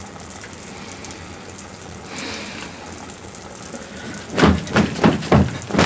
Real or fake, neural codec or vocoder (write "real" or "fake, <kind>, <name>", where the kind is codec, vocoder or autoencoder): real